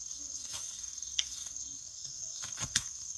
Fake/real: fake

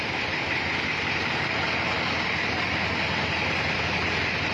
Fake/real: real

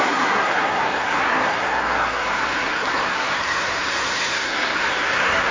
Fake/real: fake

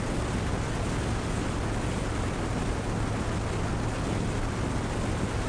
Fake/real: real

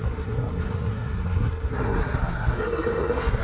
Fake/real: fake